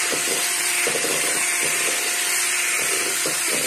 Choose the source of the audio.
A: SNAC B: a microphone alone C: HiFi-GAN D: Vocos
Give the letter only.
B